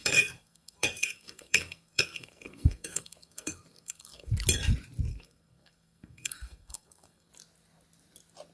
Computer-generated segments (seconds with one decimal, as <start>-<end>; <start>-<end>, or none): 0.0-4.3; 5.1-7.3